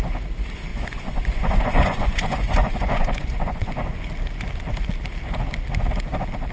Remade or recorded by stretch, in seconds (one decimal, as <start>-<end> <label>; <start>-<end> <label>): 0.0-0.7 recorded; 0.7-4.0 remade; 4.0-6.5 recorded